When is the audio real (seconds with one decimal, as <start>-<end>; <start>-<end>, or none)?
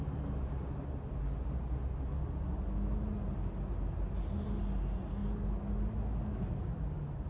0.0-7.3